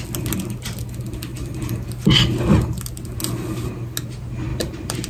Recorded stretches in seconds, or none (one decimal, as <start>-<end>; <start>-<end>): 0.0-4.5